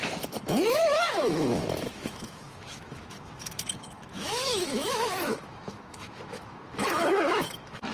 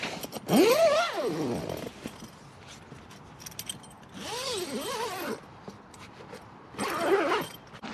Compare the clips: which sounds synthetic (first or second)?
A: first